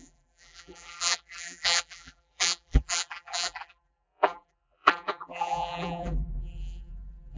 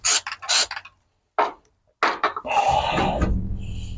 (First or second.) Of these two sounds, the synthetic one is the first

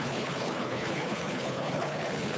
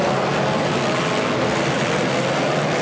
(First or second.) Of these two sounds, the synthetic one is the first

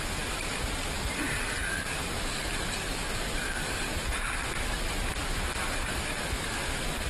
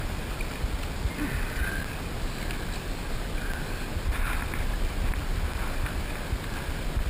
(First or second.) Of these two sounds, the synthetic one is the first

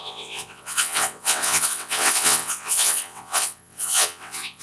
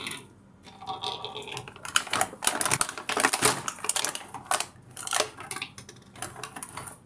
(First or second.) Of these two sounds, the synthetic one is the first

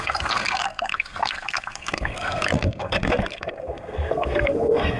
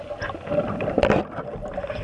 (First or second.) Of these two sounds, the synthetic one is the first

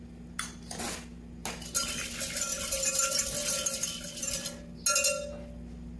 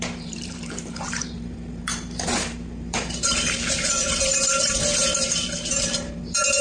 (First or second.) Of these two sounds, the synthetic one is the second